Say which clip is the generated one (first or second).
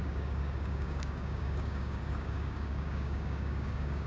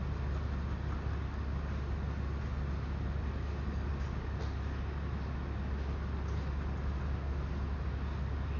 first